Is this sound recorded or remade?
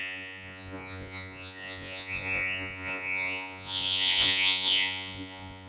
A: remade